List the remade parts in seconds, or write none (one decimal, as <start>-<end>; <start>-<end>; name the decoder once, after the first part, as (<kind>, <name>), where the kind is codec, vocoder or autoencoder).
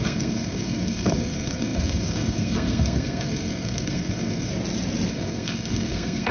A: 0.0-4.5 (codec, SNAC); 5.1-6.3